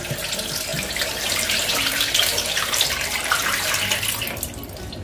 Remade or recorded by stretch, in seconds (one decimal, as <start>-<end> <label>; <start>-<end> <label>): 0.0-0.7 recorded; 0.7-3.7 remade; 3.7-5.0 recorded